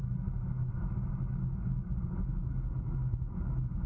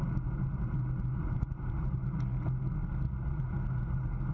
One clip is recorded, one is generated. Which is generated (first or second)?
first